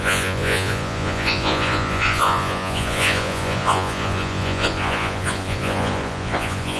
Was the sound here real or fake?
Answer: fake